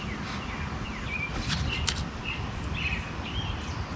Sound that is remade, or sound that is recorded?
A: recorded